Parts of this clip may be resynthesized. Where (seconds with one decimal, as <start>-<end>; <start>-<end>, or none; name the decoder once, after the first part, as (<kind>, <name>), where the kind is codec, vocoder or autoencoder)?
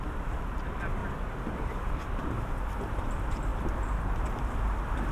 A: 0.0-1.0 (vocoder, BigVGAN v2); 2.4-5.1